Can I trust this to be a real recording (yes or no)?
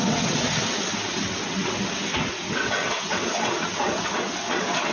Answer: no